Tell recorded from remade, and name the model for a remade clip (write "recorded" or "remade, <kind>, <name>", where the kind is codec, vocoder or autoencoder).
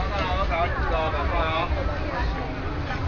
recorded